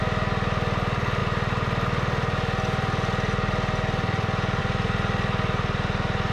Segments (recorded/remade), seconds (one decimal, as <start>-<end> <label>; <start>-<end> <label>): 0.0-6.3 recorded